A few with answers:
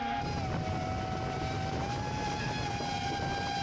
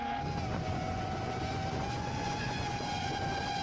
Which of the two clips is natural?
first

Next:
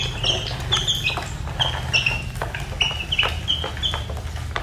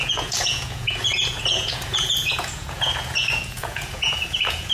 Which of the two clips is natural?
first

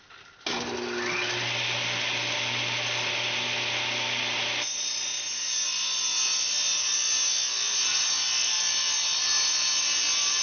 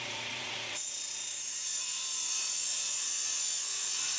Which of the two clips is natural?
first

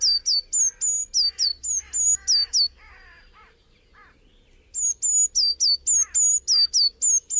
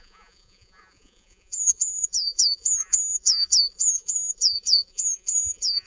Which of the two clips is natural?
first